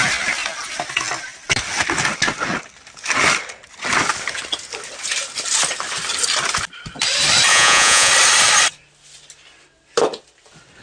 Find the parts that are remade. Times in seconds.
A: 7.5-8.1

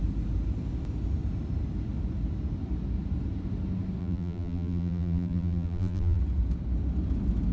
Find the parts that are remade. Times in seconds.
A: 4.0-6.2

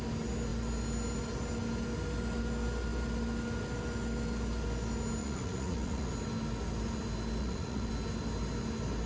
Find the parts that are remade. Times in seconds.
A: 5.2-6.1; 7.4-7.9